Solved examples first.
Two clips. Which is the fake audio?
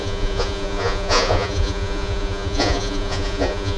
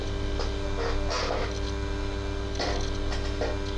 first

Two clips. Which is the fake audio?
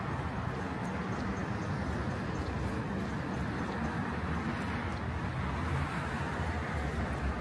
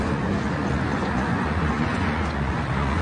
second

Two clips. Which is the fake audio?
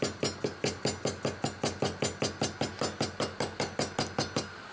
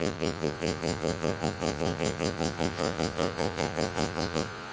second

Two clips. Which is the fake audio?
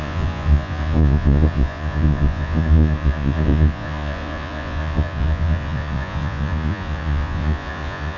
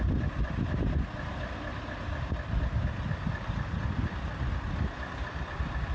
first